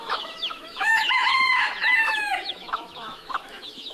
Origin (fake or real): fake